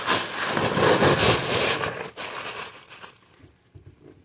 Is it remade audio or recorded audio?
recorded